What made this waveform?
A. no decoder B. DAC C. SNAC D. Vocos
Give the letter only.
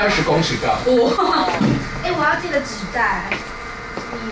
A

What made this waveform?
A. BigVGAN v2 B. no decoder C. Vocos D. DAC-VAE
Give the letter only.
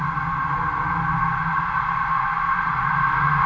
B